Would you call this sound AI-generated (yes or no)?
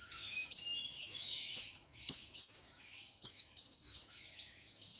yes